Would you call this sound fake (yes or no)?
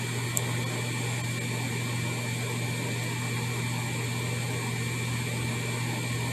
no